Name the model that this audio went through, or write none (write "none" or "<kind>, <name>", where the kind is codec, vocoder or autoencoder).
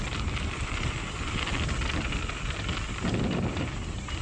none